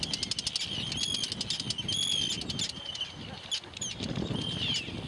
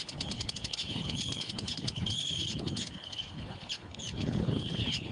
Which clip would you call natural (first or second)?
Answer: first